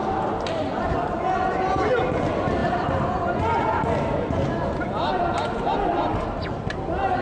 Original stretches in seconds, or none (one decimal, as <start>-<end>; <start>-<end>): 0.0-7.2